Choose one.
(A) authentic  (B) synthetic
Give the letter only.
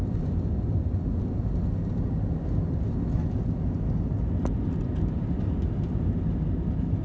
A